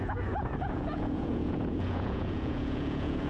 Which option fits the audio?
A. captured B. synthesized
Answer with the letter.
B